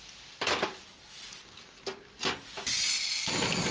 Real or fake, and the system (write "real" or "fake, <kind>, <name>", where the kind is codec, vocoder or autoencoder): real